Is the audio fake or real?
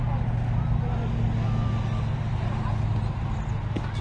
real